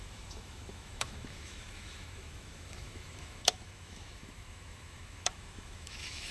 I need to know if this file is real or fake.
fake